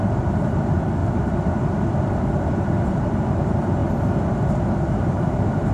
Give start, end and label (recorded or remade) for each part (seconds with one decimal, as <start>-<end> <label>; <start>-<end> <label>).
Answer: 0.0-1.0 remade; 1.0-1.9 recorded; 1.9-3.8 remade; 3.8-4.5 recorded; 4.5-5.7 remade